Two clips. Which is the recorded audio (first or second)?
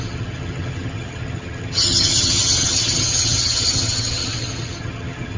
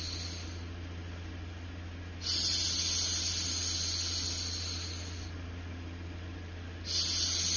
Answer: second